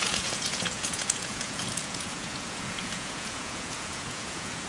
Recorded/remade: remade